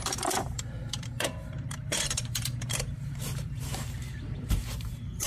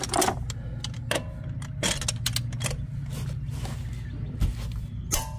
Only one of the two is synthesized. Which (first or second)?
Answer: first